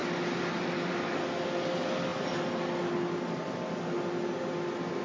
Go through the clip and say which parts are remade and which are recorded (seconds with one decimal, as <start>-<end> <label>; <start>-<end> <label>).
0.0-5.0 recorded